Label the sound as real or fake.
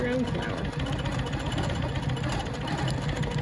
real